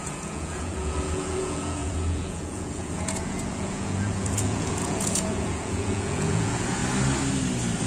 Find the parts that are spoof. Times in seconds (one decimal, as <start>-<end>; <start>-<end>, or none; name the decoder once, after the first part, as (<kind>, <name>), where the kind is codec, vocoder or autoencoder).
0.0-6.8 (vocoder, Vocos)